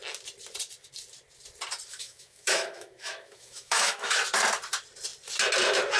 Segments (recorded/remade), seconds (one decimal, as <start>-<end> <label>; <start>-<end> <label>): 0.0-1.9 recorded; 1.9-4.2 remade; 4.2-6.0 recorded